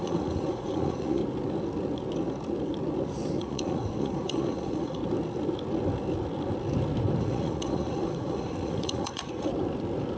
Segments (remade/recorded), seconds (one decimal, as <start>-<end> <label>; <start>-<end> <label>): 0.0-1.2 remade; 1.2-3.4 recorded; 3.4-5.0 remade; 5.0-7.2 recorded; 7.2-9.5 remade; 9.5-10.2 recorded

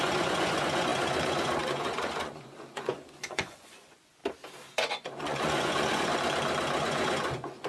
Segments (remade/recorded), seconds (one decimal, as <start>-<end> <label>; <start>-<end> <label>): 0.0-4.2 remade; 4.2-4.9 recorded; 4.9-6.1 remade; 6.1-6.8 recorded; 6.8-7.7 remade

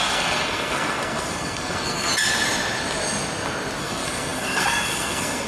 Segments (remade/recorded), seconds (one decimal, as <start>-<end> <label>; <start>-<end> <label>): 0.0-2.1 remade; 2.1-3.8 recorded; 3.8-5.5 remade